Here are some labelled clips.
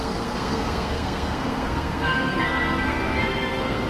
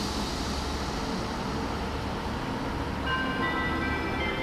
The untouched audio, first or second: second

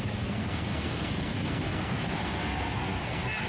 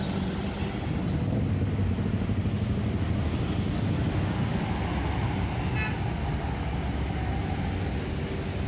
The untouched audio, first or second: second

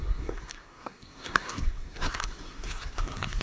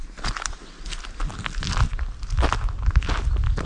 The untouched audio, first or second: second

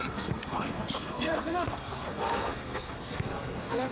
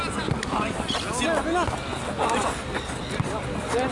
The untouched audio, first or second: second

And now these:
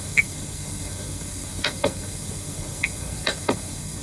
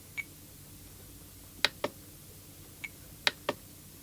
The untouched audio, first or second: second